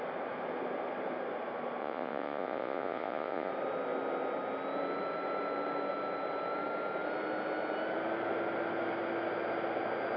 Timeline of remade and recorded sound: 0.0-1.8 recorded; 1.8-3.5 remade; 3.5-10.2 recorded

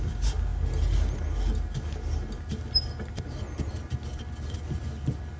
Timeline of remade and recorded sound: 0.0-5.4 recorded

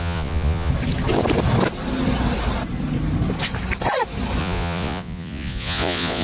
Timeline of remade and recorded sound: 0.0-0.7 remade; 0.7-4.4 recorded; 4.4-6.2 remade

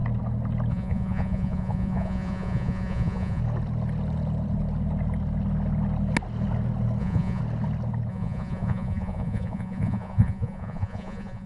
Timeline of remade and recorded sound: 0.0-0.7 recorded; 0.7-3.4 remade; 3.4-7.0 recorded; 7.0-7.4 remade; 7.4-8.1 recorded; 8.1-11.5 remade

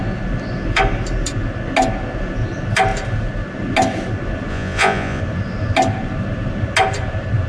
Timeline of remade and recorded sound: 0.0-4.5 recorded; 4.5-5.2 remade; 5.2-7.5 recorded

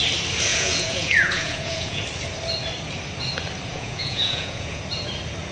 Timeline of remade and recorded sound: 0.0-0.5 recorded; 0.5-2.0 remade; 2.0-3.7 recorded; 3.7-4.8 remade; 4.8-5.5 recorded

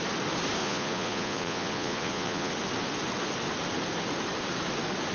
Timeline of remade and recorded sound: 0.0-0.6 recorded; 0.6-2.5 remade; 2.5-5.1 recorded

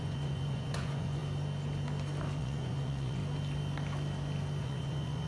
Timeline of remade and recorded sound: 0.0-1.2 remade; 1.2-2.4 recorded; 2.4-3.2 remade; 3.2-4.6 recorded; 4.6-5.3 remade